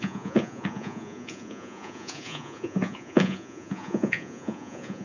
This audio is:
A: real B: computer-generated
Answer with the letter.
B